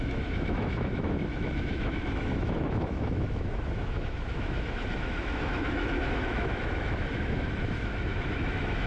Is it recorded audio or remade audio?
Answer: remade